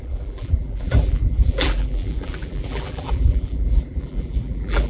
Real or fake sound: fake